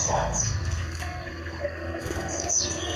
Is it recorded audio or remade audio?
remade